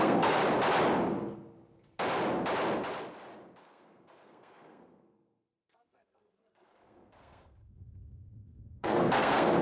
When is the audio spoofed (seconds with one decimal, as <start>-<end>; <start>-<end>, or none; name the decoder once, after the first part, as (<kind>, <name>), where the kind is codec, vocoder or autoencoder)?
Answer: 0.0-0.4 (codec, SNAC); 3.6-9.6